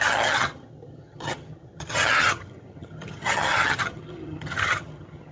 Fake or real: fake